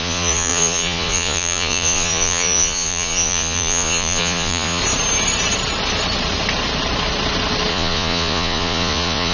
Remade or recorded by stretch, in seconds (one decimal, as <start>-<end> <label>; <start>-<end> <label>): 0.0-4.8 remade; 4.8-7.7 recorded; 7.7-9.3 remade